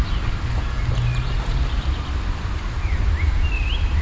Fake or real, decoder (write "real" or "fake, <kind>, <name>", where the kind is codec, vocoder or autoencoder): real